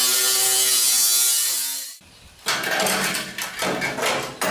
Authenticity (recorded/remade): recorded